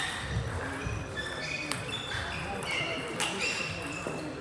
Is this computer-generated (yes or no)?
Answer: no